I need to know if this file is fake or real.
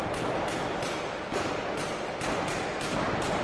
real